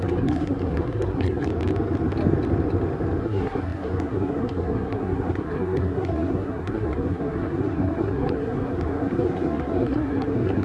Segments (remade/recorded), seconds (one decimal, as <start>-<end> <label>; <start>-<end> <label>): 0.0-1.5 remade; 1.5-3.2 recorded; 3.2-10.6 remade